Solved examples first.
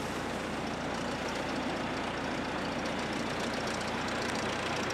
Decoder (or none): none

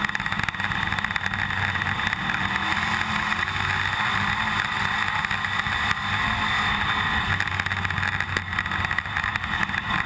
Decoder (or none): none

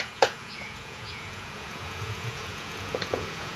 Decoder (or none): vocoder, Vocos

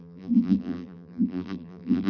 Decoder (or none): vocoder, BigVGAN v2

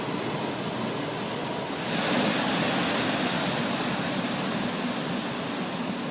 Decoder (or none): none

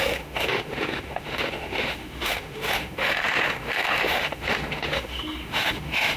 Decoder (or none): autoencoder, DAC-VAE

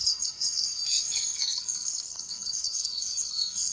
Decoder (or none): codec, SNAC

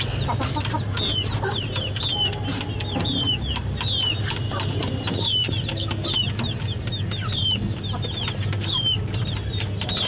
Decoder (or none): none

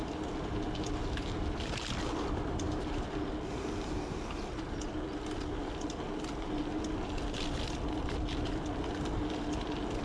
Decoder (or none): none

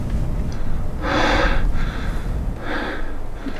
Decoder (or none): none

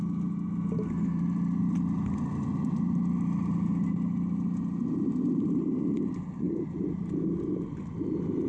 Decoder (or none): none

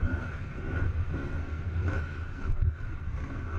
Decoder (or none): codec, SNAC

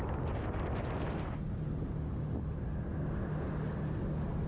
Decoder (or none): none